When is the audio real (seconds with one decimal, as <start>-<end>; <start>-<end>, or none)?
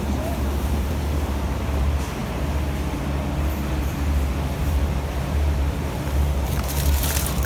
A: 2.2-3.7